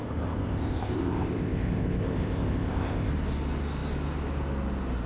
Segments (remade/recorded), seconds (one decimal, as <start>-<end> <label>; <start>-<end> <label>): 0.0-3.1 remade; 3.1-5.1 recorded